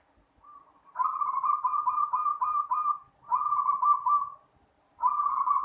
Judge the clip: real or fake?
real